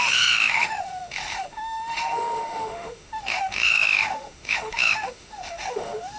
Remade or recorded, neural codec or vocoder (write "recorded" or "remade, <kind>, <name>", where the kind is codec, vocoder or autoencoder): remade, autoencoder, DAC-VAE